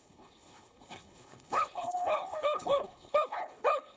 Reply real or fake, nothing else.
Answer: fake